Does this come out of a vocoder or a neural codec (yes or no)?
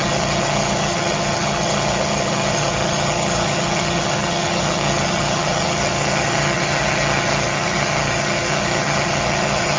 yes